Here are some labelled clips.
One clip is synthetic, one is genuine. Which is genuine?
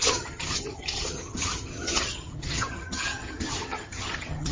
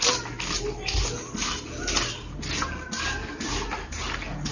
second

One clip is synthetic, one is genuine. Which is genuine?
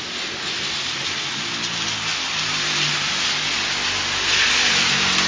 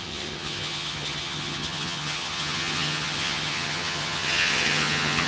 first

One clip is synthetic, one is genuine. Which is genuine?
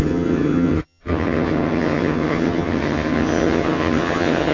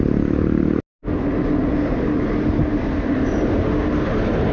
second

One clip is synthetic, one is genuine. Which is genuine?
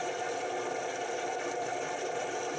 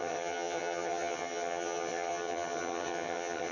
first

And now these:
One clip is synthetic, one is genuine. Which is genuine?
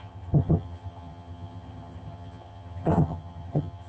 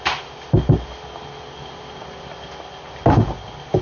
second